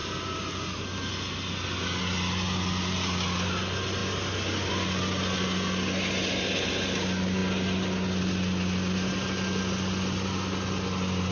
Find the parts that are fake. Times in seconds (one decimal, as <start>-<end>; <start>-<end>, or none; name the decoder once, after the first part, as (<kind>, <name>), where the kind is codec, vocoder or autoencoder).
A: none